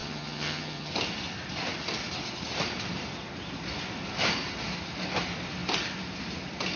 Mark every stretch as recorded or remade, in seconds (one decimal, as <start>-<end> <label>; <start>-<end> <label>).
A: 0.0-0.9 remade; 0.9-6.8 recorded

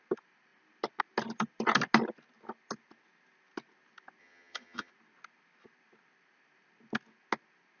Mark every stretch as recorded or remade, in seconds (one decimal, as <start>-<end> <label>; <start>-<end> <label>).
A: 0.0-4.2 recorded; 4.2-4.9 remade; 4.9-7.8 recorded

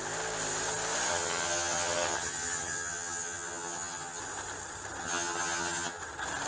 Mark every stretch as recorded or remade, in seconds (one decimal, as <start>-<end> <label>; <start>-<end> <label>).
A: 0.0-1.1 recorded; 1.1-4.2 remade; 4.2-5.0 recorded; 5.0-6.0 remade; 6.0-6.5 recorded